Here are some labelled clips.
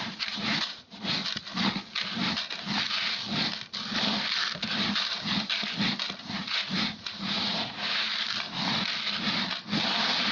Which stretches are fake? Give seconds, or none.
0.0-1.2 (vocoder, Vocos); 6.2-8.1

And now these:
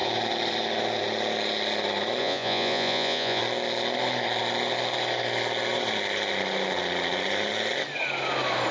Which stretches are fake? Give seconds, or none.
2.2-3.4 (vocoder, Vocos)

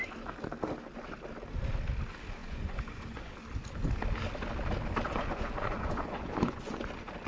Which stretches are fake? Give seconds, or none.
2.4-3.3 (vocoder, Vocos); 5.1-6.8